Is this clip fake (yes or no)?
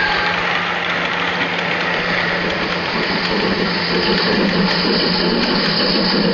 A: no